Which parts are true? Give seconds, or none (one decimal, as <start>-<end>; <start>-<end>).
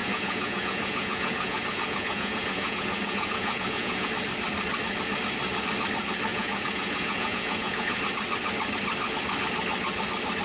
4.1-6.3; 8.0-10.4